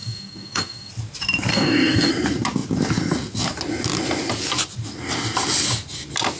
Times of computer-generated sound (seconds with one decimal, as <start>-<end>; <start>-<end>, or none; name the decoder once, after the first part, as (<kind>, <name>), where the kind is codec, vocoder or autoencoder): 0.0-0.9 (codec, DAC); 1.5-2.1